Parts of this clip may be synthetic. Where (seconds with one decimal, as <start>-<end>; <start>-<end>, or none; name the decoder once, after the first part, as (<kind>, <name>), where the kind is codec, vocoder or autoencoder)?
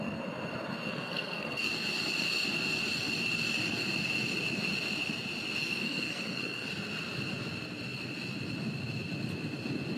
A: 0.9-1.7 (codec, SNAC); 5.6-6.7